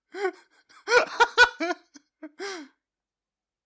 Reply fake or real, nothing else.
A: real